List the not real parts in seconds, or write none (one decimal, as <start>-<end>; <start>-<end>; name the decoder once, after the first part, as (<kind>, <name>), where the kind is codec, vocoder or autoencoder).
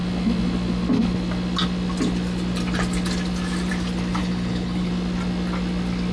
4.2-4.9 (codec, HILCodec)